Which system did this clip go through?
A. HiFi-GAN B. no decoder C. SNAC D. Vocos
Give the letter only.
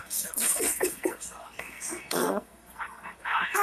C